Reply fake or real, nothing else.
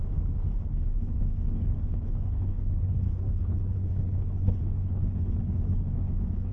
fake